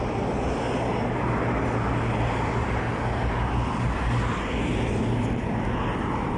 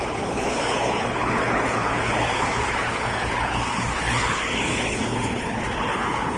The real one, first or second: first